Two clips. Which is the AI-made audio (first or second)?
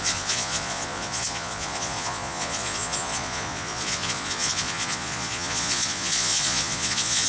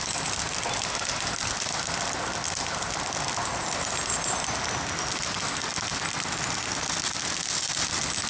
first